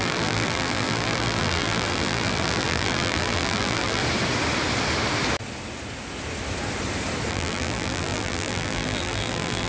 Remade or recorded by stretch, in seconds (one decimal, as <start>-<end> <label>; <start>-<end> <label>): 0.0-4.0 remade; 4.0-7.3 recorded; 7.3-9.7 remade